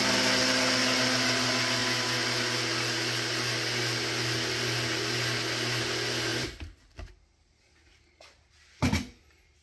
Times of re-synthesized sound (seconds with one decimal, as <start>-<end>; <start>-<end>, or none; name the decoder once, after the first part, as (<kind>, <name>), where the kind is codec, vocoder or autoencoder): none